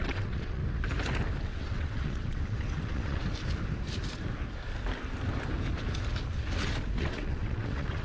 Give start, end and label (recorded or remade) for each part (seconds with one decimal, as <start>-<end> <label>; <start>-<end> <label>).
0.0-0.6 remade; 0.6-1.4 recorded; 1.4-3.2 remade; 3.2-7.0 recorded; 7.0-8.0 remade